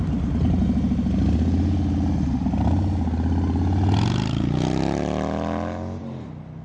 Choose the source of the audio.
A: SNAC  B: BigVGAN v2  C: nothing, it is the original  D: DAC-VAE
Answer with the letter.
C